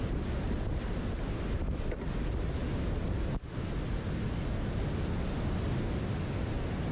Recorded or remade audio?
recorded